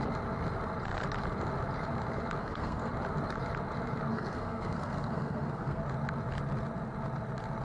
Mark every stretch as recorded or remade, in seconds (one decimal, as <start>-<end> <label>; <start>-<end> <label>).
0.0-2.4 recorded; 2.4-2.9 remade; 2.9-4.1 recorded; 4.1-5.8 remade; 5.8-7.6 recorded

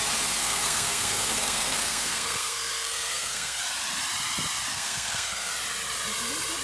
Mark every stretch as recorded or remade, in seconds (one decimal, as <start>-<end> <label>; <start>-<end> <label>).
0.0-0.4 recorded; 0.4-3.6 remade; 3.6-4.7 recorded; 4.7-5.5 remade; 5.5-6.6 recorded

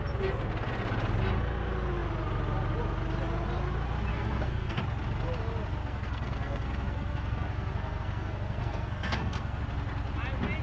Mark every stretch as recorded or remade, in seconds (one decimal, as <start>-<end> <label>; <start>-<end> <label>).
0.0-4.1 recorded; 4.1-4.8 remade; 4.8-5.8 recorded; 5.8-9.6 remade; 9.6-10.6 recorded